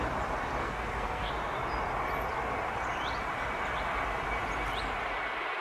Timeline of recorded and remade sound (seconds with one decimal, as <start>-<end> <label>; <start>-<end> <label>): 0.0-0.6 recorded; 0.6-1.3 remade; 1.3-5.6 recorded